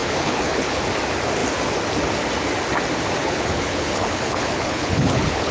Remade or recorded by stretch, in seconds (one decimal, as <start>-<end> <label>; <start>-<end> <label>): 0.0-0.8 remade; 0.8-3.2 recorded; 3.2-5.5 remade